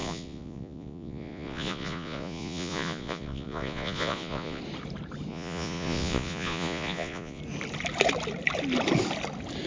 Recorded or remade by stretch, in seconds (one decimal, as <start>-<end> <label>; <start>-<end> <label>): 0.0-4.6 remade; 4.6-5.3 recorded; 5.3-7.4 remade; 7.4-9.7 recorded